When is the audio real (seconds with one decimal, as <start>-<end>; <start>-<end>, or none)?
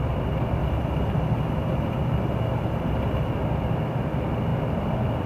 0.0-0.6; 3.3-5.3